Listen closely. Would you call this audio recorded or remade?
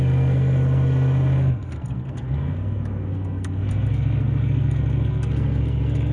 remade